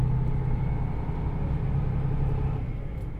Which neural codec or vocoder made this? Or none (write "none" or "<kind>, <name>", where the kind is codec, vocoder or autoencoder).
none